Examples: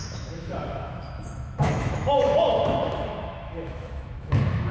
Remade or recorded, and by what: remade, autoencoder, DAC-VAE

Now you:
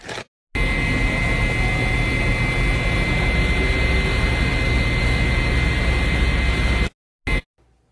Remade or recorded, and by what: recorded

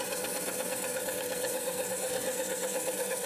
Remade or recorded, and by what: remade, codec, SNAC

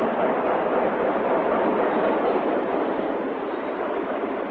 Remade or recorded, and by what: recorded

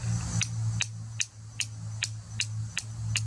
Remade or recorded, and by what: recorded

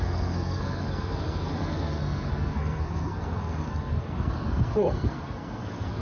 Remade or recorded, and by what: remade, codec, SNAC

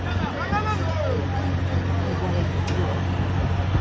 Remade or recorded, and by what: recorded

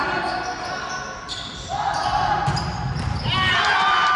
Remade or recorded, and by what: recorded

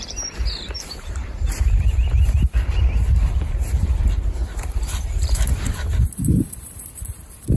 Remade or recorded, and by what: remade, vocoder, BigVGAN v2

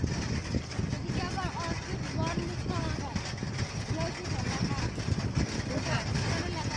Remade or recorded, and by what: recorded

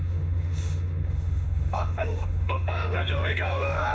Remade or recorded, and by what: remade, autoencoder, DAC-VAE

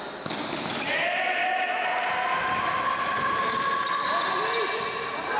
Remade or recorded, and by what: recorded